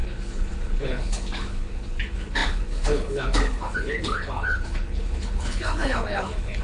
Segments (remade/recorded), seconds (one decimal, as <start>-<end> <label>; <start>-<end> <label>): 0.0-6.6 remade